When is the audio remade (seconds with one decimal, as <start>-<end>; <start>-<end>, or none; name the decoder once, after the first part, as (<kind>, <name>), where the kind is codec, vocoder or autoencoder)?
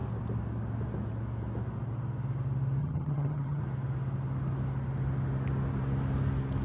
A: 2.8-3.6 (vocoder, HiFi-GAN)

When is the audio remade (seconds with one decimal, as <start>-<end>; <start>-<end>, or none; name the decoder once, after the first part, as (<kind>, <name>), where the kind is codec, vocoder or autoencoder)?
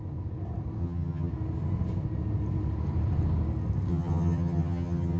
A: 0.8-1.3 (vocoder, HiFi-GAN); 3.9-5.2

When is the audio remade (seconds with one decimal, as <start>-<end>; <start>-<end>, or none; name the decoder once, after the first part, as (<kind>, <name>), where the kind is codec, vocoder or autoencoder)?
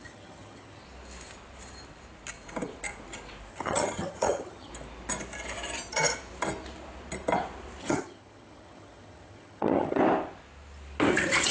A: 0.0-0.8 (vocoder, HiFi-GAN); 3.5-4.7; 7.8-10.0; 11.1-11.5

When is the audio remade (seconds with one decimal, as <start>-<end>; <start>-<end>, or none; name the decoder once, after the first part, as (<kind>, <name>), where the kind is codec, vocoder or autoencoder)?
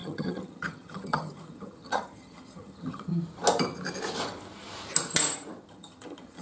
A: 0.0-3.1 (vocoder, HiFi-GAN); 5.7-6.4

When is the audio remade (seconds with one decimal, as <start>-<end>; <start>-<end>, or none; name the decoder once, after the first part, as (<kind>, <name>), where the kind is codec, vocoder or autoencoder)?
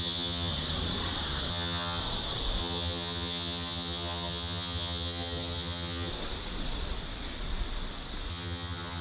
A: 0.0-0.5 (vocoder, HiFi-GAN); 1.5-2.0; 2.6-6.1; 8.3-9.0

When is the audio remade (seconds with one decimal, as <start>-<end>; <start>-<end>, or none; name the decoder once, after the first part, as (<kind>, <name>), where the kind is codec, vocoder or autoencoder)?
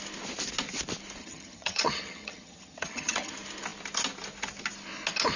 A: 1.2-3.3 (vocoder, HiFi-GAN)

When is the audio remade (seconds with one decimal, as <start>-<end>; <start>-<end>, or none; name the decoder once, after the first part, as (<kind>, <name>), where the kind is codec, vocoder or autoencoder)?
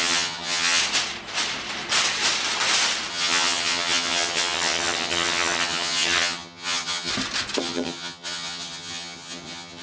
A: 0.0-0.8 (vocoder, HiFi-GAN); 3.1-7.1; 7.6-9.8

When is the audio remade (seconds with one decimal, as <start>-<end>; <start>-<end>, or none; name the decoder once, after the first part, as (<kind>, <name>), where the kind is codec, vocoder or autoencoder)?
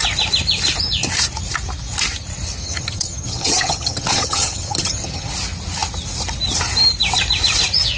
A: 2.6-5.3 (vocoder, HiFi-GAN)